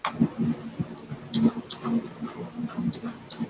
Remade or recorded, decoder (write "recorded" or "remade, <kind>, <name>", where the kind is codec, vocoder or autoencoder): recorded